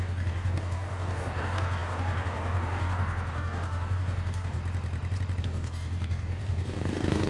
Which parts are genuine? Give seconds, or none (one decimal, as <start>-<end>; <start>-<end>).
4.6-5.4